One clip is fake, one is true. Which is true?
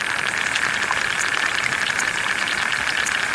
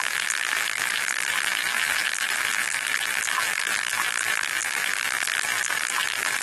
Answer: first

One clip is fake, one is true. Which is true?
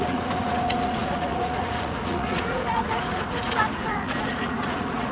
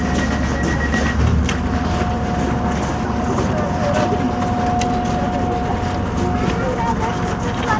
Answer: second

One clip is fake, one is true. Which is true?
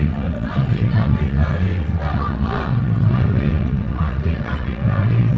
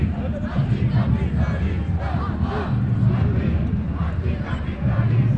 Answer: second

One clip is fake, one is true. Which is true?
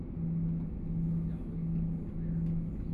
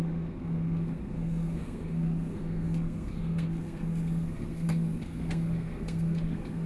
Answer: first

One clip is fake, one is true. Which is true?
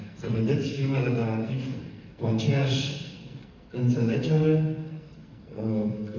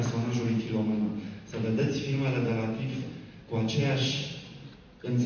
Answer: second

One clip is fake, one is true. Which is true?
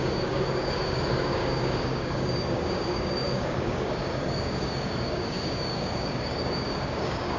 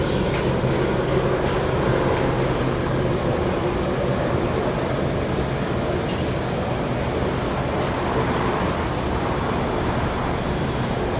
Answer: second